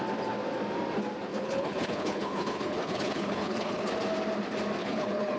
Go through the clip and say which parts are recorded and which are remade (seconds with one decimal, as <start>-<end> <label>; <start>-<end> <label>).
0.0-1.3 recorded; 1.3-3.9 remade; 3.9-4.8 recorded; 4.8-5.4 remade